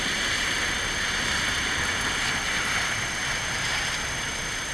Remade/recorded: recorded